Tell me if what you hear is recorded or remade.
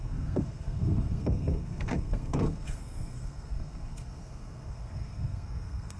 remade